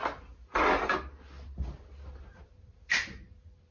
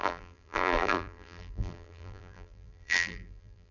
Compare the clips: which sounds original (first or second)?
first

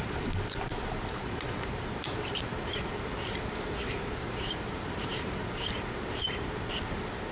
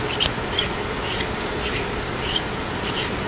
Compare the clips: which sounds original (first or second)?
second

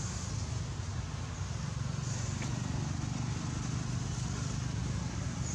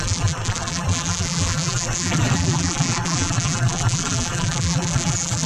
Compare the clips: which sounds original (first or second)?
first